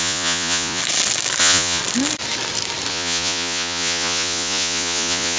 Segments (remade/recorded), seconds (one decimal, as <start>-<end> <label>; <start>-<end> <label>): 0.0-0.8 remade; 0.8-1.4 recorded; 1.4-1.8 remade; 1.8-2.9 recorded; 2.9-5.4 remade